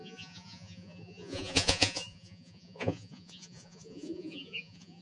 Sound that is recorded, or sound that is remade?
remade